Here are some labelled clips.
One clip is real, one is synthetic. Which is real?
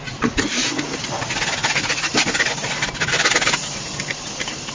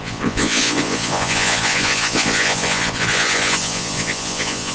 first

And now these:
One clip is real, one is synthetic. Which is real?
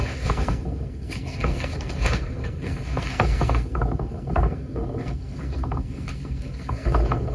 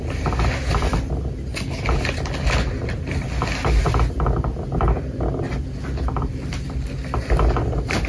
second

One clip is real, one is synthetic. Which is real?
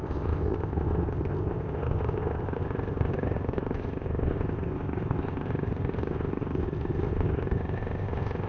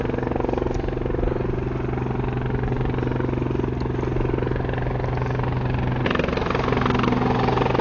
second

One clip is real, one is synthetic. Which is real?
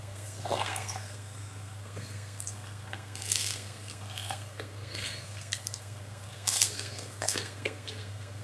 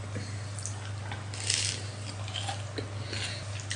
second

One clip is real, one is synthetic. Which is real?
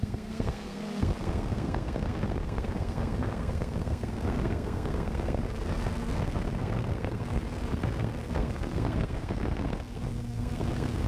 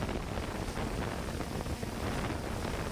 second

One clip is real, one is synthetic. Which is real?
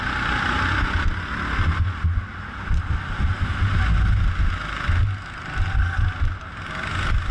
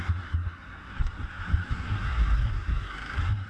first